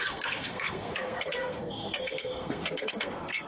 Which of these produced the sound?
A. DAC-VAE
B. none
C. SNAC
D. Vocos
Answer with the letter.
C